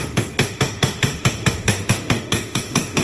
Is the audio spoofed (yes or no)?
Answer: yes